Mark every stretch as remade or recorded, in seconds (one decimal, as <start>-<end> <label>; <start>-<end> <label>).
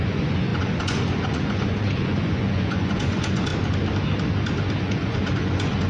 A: 0.0-3.5 remade; 3.5-4.8 recorded; 4.8-5.9 remade